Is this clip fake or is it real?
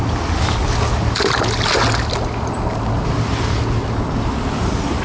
real